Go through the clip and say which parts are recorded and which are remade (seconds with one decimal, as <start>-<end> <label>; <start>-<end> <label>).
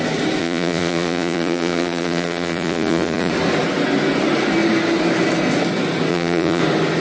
0.0-0.4 recorded; 0.4-3.3 remade; 3.3-6.1 recorded; 6.1-6.6 remade; 6.6-7.0 recorded